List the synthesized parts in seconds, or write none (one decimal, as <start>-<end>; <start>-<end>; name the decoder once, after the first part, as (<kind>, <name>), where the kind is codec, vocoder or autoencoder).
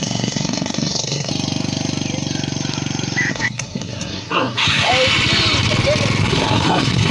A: 0.0-1.3 (codec, SNAC); 3.3-4.9; 6.2-7.1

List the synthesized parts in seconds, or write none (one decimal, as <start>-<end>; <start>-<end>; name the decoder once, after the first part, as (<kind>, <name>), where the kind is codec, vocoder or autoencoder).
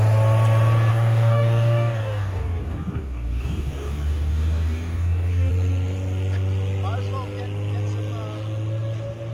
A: 0.9-5.5 (codec, DAC)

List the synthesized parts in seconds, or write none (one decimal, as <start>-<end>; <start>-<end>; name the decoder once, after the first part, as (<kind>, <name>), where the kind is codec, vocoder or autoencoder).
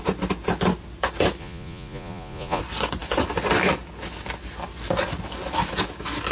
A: 1.4-2.6 (vocoder, Vocos)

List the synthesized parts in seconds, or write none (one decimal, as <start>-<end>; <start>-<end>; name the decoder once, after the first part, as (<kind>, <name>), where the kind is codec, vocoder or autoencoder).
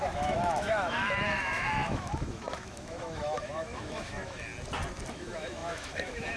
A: 0.0-4.5 (autoencoder, DAC-VAE); 5.1-6.4